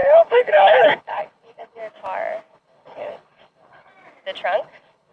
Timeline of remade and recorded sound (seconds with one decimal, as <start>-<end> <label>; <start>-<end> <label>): 0.0-1.8 remade; 1.8-2.5 recorded; 2.5-3.9 remade; 3.9-4.6 recorded; 4.6-5.1 remade